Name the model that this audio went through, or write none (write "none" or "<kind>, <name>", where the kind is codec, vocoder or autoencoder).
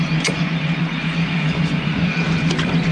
vocoder, Vocos